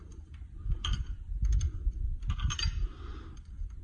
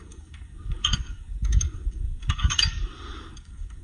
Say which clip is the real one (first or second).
first